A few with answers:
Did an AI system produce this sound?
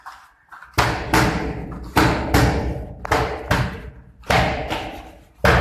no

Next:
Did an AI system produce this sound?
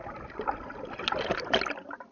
no